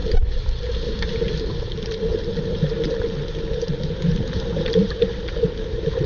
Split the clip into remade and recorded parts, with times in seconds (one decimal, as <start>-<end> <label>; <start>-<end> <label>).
0.0-6.1 recorded